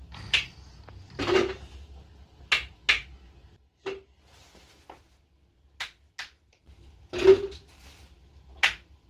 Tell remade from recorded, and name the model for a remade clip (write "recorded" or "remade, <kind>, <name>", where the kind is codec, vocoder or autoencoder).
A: recorded